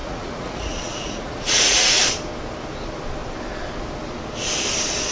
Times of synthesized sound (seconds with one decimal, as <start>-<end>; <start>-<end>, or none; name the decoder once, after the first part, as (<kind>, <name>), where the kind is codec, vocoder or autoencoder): 0.0-2.0 (vocoder, Vocos)